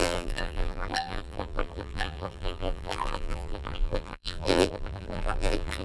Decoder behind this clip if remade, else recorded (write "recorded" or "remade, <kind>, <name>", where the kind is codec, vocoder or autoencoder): remade, vocoder, BigVGAN v2